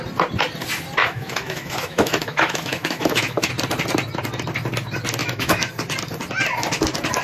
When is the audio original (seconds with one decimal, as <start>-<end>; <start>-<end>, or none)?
0.0-1.0; 3.5-5.2; 5.7-7.2